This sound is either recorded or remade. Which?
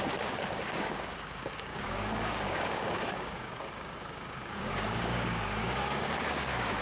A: remade